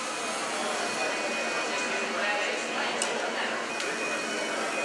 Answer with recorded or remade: recorded